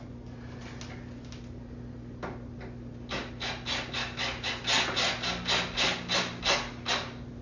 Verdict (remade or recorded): recorded